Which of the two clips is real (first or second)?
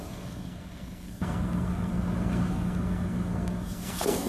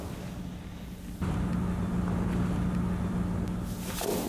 second